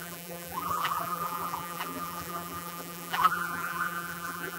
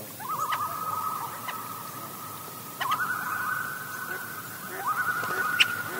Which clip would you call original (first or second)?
second